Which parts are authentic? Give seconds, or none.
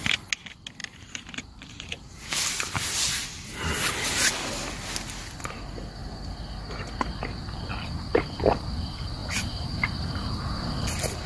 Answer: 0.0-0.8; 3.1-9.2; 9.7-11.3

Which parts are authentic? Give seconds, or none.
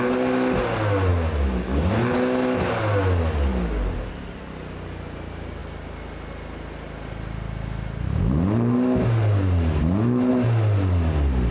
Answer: 0.0-11.5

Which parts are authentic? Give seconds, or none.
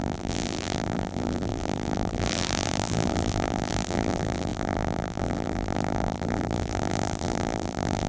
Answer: none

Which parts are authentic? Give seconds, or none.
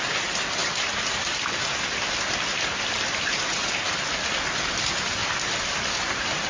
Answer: 0.0-0.6; 4.5-5.2; 5.7-6.5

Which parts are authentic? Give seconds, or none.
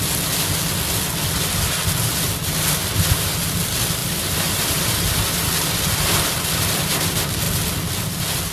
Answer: 0.0-4.0; 4.8-8.5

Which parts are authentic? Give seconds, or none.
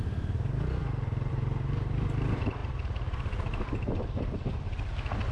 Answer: 0.0-5.3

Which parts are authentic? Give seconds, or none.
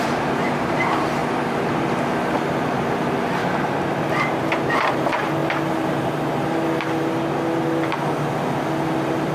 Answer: 1.2-1.7; 3.4-4.0; 5.4-8.9